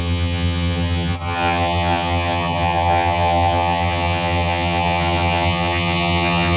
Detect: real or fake fake